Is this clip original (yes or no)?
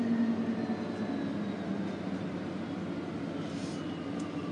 yes